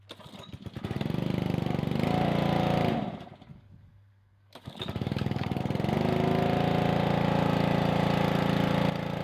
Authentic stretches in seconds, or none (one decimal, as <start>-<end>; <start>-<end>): 0.0-3.5; 5.6-9.2